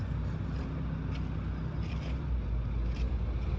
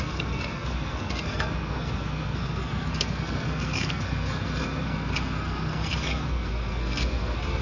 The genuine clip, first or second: first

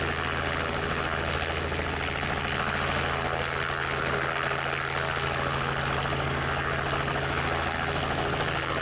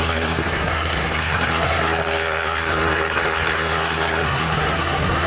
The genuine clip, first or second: first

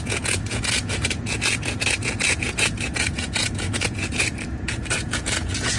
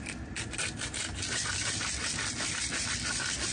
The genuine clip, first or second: second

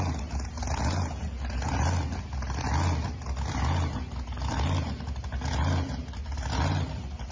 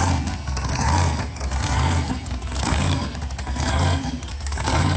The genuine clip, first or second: first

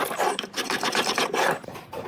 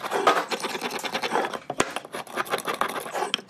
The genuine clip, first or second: second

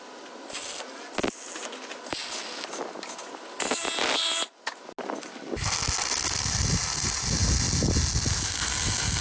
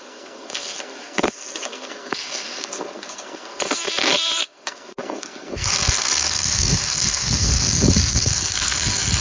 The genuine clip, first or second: first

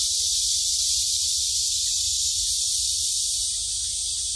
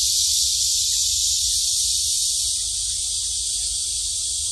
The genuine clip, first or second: second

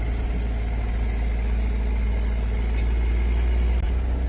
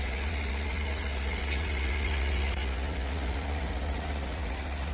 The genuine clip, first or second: first